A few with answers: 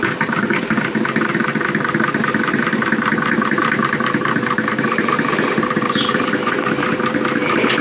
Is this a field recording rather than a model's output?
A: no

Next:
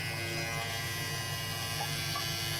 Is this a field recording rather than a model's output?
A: yes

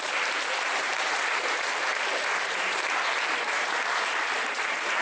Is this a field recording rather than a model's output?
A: no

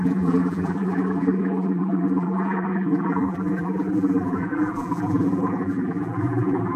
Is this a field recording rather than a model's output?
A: no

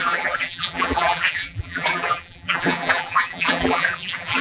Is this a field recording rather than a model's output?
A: no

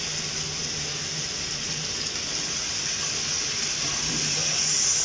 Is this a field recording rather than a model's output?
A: yes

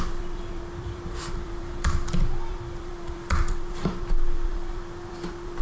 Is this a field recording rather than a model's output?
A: no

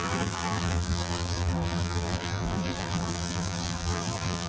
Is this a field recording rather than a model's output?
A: no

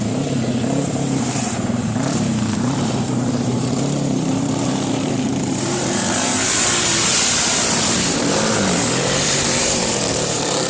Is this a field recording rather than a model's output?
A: no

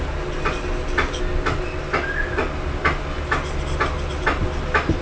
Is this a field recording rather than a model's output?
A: yes